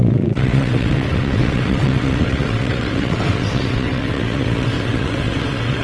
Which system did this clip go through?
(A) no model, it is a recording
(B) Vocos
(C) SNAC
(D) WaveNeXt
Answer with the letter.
D